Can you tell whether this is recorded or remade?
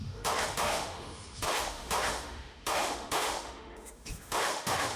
remade